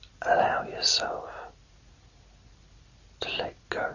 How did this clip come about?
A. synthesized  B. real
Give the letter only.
B